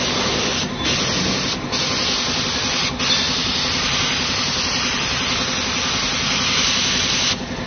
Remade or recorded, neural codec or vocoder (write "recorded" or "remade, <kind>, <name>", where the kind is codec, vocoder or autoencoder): recorded